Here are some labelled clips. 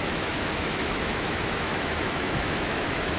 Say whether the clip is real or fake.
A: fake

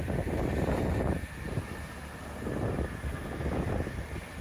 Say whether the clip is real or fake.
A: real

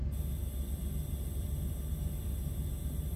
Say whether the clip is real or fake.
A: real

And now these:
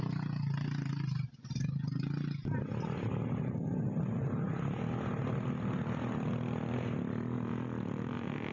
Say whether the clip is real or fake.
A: real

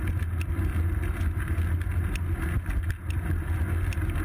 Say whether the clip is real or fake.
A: real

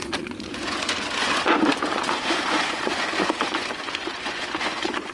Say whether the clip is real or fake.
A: fake